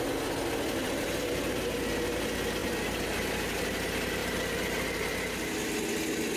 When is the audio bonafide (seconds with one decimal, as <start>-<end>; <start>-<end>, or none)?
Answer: 0.0-2.6; 3.6-6.4